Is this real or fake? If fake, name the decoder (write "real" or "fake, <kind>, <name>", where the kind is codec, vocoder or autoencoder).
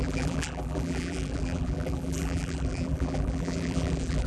fake, vocoder, BigVGAN v2